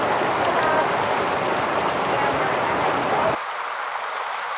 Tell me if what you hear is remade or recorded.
recorded